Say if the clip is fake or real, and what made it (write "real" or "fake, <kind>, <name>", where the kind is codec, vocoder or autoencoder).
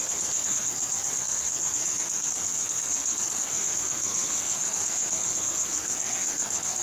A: fake, codec, SNAC